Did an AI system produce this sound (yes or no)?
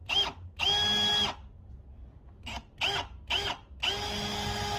no